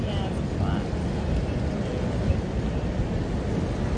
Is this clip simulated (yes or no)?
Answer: no